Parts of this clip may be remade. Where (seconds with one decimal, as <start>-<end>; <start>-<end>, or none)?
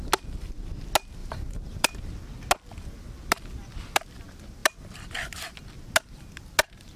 1.2-2.1